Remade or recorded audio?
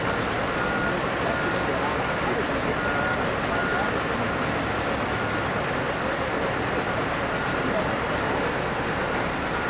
recorded